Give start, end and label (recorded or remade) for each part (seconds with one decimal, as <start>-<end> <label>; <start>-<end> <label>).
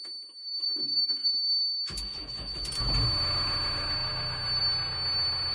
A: 0.0-0.5 recorded; 0.5-2.8 remade; 2.8-5.5 recorded